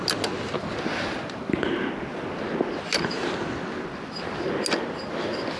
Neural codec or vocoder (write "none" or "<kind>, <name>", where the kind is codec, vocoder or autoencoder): none